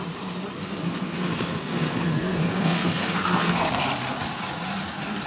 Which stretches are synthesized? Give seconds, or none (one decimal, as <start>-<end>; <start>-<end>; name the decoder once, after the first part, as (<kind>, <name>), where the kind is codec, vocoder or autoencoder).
0.6-3.8 (codec, SNAC)